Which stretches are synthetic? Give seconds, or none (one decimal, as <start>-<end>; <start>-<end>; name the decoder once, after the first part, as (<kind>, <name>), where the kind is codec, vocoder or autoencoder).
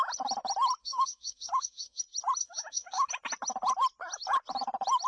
0.8-2.0 (autoencoder, DAC-VAE); 2.4-3.1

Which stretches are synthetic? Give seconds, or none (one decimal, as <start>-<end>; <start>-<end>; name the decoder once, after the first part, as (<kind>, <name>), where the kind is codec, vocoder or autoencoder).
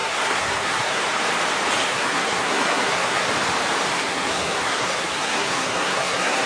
0.0-1.0 (codec, SNAC); 1.8-3.3; 3.9-6.5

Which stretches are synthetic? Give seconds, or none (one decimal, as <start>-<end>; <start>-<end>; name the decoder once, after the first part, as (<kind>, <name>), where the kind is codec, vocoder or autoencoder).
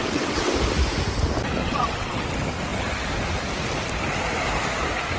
0.0-0.5 (vocoder, WaveNeXt); 1.6-2.3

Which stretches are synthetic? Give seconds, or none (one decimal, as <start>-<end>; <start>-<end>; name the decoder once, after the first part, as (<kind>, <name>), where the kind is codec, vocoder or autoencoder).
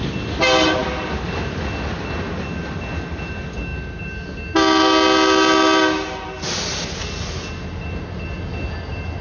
none